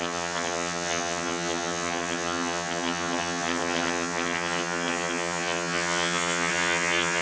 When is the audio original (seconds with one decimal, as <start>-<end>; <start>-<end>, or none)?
none